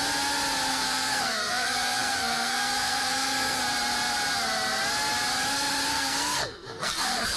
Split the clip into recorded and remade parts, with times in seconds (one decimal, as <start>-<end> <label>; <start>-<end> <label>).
0.0-0.7 recorded; 0.7-3.6 remade; 3.6-5.9 recorded; 5.9-7.4 remade